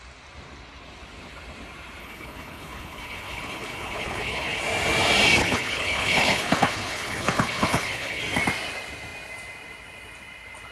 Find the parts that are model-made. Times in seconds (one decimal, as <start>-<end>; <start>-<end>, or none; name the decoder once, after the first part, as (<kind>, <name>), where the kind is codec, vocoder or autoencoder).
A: 2.0-4.6 (codec, HILCodec); 5.4-8.2